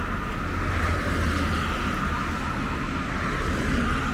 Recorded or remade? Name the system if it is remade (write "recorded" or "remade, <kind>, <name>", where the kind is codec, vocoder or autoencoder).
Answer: recorded